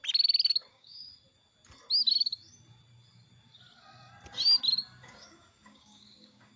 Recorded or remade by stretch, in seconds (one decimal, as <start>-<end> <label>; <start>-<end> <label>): 0.0-0.7 recorded; 0.7-1.1 remade; 1.1-5.1 recorded; 5.1-6.6 remade